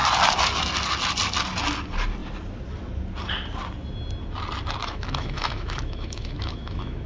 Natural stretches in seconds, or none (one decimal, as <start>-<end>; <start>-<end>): 0.0-4.8